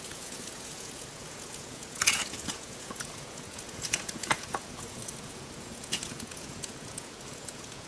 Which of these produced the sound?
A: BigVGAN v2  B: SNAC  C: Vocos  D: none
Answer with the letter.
C